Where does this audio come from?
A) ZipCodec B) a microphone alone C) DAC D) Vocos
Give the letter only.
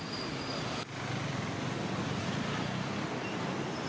B